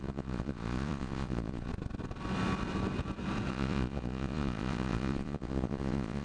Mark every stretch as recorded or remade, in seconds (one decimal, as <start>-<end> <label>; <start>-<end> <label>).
0.0-1.7 remade; 1.7-3.5 recorded; 3.5-6.2 remade